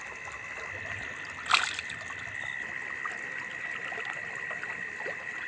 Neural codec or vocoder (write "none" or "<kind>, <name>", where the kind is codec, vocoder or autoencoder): none